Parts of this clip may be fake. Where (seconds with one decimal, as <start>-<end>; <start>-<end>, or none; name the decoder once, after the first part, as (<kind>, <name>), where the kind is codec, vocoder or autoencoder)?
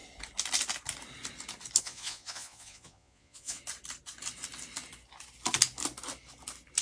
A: 1.8-3.6 (vocoder, Vocos)